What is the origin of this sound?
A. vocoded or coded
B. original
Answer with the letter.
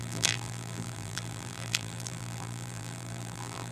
A